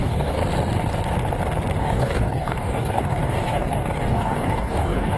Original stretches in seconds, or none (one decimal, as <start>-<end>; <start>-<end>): 0.4-1.8

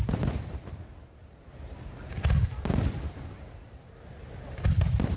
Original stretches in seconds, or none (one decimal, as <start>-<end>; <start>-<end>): 0.0-5.2

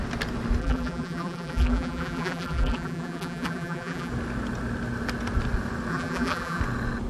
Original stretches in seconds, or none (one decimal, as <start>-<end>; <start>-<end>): 0.0-0.6; 4.1-5.9; 6.6-7.1

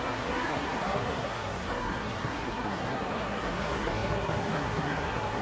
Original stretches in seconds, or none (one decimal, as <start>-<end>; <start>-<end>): none